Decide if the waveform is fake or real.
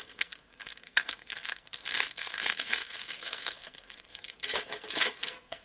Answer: fake